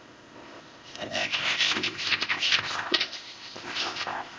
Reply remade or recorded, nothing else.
remade